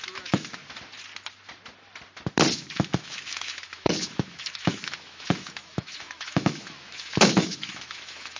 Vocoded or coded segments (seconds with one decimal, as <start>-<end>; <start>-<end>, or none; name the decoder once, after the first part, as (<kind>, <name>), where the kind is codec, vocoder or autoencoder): 0.0-0.6 (autoencoder, DAC-VAE); 2.5-8.4